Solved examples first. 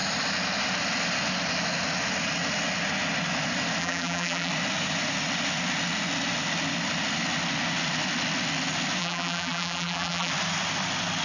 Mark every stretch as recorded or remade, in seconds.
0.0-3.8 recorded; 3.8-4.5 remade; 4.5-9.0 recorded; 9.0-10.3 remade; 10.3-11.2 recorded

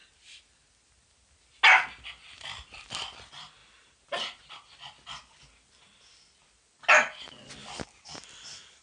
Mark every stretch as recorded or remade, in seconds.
0.0-3.6 recorded; 3.6-4.5 remade; 4.5-8.8 recorded

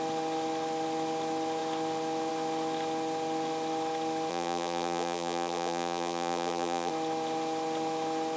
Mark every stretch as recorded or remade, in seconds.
0.0-4.3 recorded; 4.3-6.9 remade; 6.9-8.4 recorded

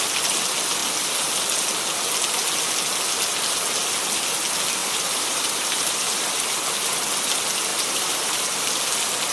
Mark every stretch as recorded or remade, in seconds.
0.0-4.8 recorded; 4.8-6.3 remade; 6.3-7.7 recorded; 7.7-8.7 remade; 8.7-9.3 recorded